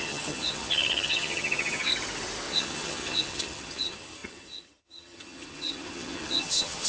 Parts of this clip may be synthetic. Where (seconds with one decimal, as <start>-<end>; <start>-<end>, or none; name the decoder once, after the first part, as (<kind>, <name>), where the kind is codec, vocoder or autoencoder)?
0.0-1.9 (vocoder, HiFi-GAN); 2.5-6.9